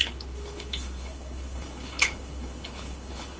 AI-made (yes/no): yes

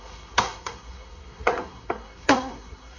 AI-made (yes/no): yes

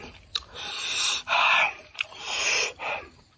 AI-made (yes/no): yes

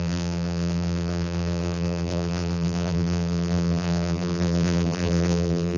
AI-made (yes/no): yes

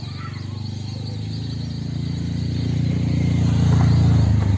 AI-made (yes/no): no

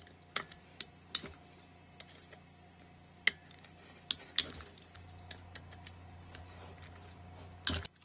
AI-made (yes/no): no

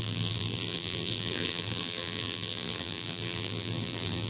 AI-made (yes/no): yes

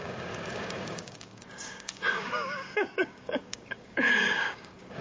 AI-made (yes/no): yes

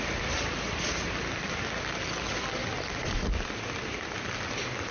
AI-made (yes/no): no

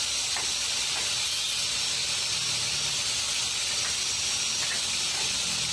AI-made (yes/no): no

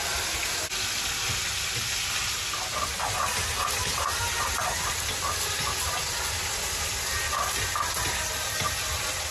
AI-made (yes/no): no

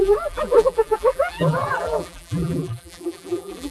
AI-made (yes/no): yes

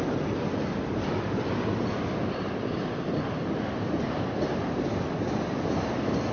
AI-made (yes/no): no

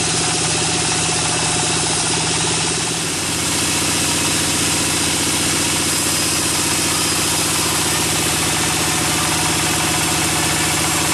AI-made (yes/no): no